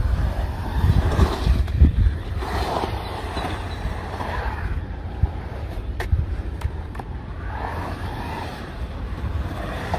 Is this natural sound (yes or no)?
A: no